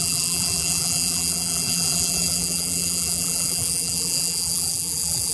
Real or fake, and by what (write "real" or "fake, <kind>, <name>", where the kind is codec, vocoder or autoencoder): fake, vocoder, BigVGAN v2